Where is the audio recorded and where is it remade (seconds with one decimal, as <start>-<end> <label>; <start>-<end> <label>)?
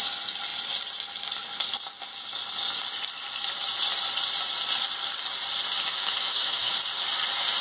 0.0-6.0 recorded; 6.0-6.7 remade; 6.7-7.6 recorded